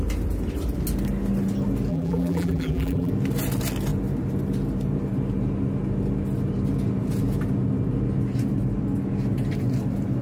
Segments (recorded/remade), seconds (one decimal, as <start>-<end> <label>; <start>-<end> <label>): 0.0-1.9 recorded; 1.9-3.1 remade; 3.1-10.2 recorded